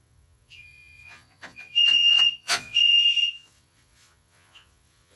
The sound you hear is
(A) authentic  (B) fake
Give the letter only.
B